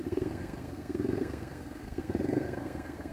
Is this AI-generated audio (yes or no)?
yes